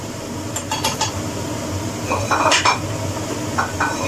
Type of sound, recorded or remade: recorded